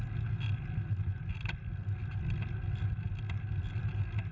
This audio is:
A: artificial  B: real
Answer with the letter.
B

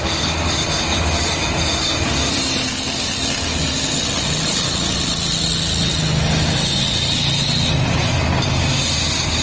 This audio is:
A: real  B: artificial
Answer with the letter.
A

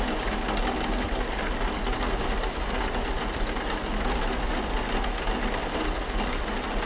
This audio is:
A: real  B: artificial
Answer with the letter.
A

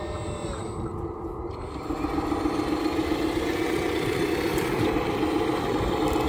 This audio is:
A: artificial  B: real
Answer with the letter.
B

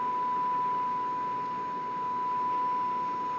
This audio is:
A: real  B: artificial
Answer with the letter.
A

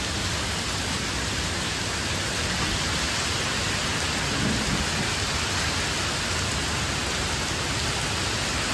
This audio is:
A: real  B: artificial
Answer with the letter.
A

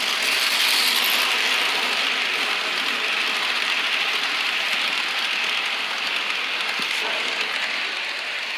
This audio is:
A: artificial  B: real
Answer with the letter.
B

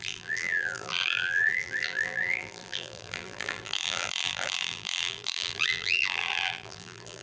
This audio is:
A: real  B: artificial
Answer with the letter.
B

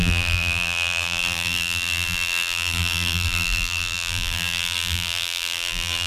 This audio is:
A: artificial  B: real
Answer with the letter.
A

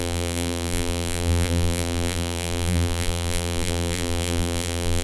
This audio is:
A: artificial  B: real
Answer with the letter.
A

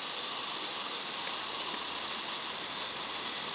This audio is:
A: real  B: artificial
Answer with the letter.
A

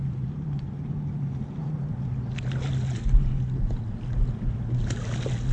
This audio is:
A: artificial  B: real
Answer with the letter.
B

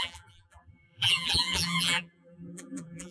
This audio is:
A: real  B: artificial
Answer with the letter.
B